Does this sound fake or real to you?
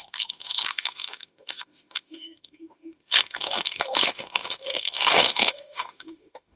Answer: fake